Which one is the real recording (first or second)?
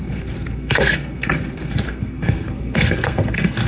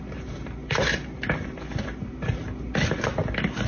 second